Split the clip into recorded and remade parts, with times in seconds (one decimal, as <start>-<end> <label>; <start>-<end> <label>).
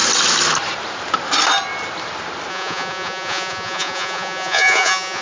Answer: 0.0-2.5 recorded; 2.5-5.2 remade